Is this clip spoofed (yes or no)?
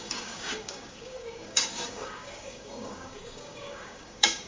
yes